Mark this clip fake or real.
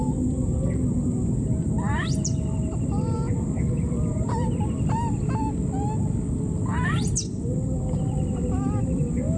real